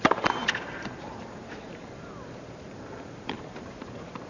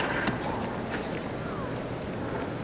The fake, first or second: first